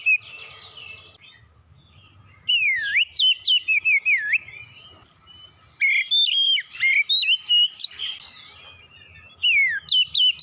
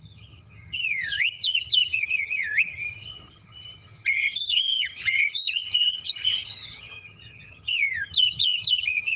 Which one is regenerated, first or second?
second